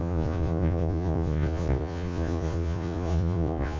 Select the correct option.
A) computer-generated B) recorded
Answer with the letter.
A